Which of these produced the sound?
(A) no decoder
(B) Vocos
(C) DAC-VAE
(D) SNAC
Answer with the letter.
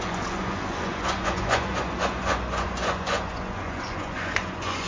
B